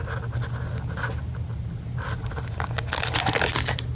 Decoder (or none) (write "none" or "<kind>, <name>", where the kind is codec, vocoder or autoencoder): none